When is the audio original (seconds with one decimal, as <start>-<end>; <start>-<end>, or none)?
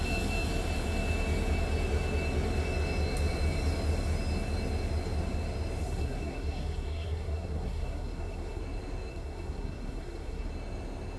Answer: 0.0-5.8; 8.6-9.1; 10.5-11.2